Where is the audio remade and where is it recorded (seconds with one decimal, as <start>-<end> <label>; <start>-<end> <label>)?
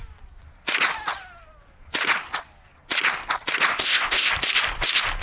0.0-3.7 recorded; 3.7-4.3 remade; 4.3-5.2 recorded